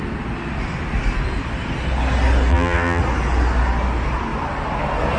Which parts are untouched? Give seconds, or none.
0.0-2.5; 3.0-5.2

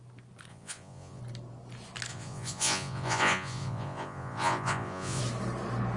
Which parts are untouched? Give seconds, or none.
0.0-0.5; 1.2-2.1; 5.2-6.0

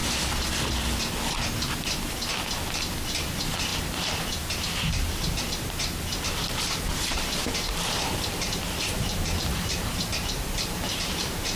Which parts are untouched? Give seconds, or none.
0.0-3.1

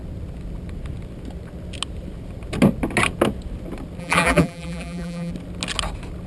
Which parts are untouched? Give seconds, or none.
0.0-4.0; 5.3-6.3

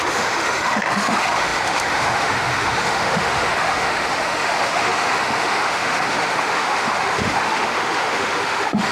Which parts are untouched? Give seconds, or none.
none

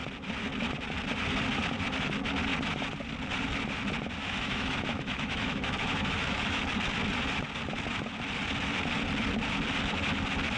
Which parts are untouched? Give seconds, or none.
0.0-4.2; 6.6-10.6

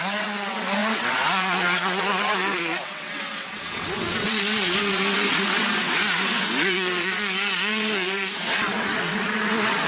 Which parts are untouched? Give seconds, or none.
none

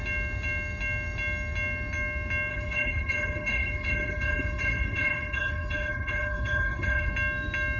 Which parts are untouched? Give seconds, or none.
0.0-2.5; 7.1-7.8